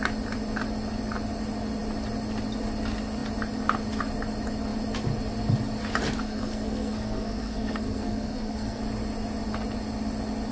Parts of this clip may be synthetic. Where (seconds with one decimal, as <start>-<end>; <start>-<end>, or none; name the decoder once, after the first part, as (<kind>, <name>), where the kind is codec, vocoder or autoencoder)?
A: 6.2-8.8 (codec, SNAC)